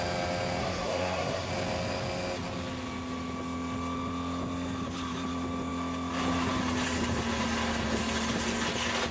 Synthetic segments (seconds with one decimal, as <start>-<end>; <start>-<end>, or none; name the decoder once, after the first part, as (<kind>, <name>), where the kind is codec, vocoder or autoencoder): 0.6-1.5 (codec, SNAC)